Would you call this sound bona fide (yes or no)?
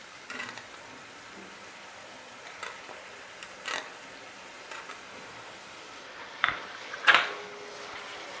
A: no